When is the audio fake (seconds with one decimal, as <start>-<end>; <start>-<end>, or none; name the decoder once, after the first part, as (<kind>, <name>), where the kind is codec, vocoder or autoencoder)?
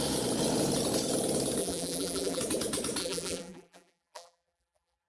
1.6-2.4 (vocoder, BigVGAN v2); 3.0-5.1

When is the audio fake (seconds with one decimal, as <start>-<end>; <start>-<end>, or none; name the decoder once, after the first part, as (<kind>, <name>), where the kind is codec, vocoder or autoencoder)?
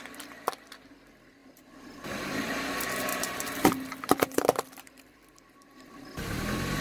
1.4-2.4 (vocoder, BigVGAN v2); 3.1-6.8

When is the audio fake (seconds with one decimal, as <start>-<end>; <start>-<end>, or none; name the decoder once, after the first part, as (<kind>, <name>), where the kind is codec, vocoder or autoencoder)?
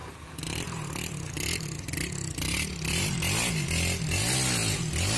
none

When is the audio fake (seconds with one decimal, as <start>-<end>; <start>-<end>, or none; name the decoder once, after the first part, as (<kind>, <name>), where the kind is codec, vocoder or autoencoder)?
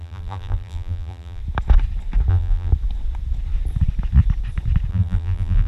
0.0-1.4 (vocoder, BigVGAN v2); 2.3-2.7; 4.9-5.7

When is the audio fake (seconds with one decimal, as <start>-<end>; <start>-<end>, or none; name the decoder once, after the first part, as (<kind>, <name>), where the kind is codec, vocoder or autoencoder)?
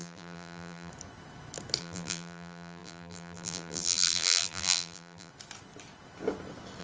0.0-0.9 (vocoder, BigVGAN v2); 1.8-5.3